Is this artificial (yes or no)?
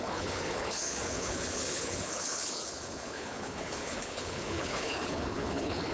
yes